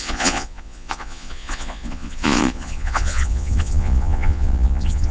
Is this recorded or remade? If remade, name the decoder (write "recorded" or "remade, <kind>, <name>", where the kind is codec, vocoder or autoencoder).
remade, vocoder, Vocos